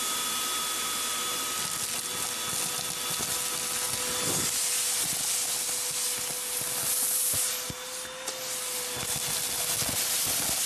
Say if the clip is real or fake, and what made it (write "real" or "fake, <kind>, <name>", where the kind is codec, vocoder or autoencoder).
real